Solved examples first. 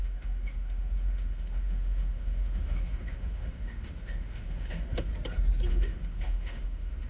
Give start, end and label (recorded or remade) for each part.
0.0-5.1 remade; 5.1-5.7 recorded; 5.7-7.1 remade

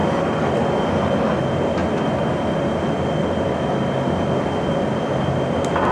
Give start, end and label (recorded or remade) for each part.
0.0-5.9 recorded

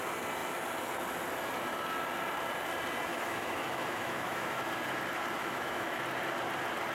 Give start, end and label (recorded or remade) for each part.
0.0-3.1 recorded; 3.1-4.6 remade; 4.6-5.4 recorded; 5.4-6.0 remade; 6.0-6.9 recorded